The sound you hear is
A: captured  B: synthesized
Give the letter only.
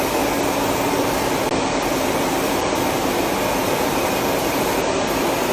A